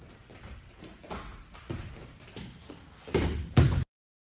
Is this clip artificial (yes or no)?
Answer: no